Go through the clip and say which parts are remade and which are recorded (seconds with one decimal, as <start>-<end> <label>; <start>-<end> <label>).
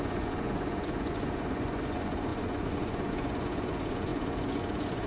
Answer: 0.0-5.1 remade